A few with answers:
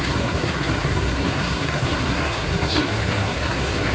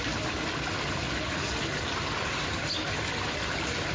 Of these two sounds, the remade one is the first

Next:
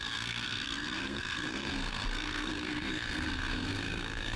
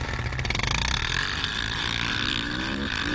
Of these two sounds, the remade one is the first